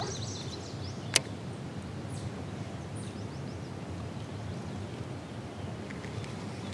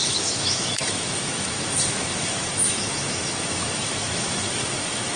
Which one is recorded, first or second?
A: first